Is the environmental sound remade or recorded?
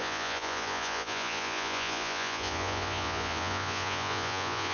remade